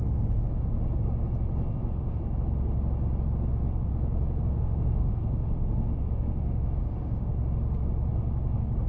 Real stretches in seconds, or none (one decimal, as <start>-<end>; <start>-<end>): 0.7-1.7; 2.2-3.5; 3.9-4.6; 7.3-8.9